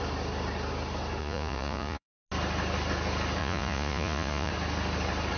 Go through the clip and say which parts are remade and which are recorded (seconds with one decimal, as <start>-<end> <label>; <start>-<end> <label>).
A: 0.0-1.2 recorded; 1.2-2.2 remade; 2.2-3.4 recorded; 3.4-4.5 remade; 4.5-5.4 recorded